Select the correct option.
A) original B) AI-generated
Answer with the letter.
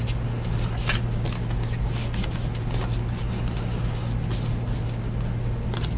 A